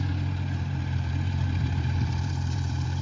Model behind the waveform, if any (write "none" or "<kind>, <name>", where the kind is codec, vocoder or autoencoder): vocoder, BigVGAN v2